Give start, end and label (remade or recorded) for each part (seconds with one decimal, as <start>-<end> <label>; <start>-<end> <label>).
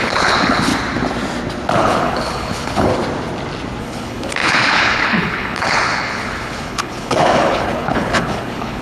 0.0-0.7 remade; 0.7-1.8 recorded; 1.8-2.9 remade; 2.9-3.8 recorded; 3.8-8.8 remade